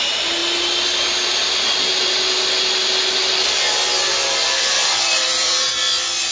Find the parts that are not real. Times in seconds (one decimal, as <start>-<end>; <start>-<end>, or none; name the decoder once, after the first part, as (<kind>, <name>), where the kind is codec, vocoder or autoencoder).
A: 4.8-5.8 (vocoder, BigVGAN v2)